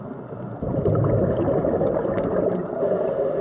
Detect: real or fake real